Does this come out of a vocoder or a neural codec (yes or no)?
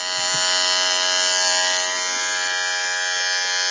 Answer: no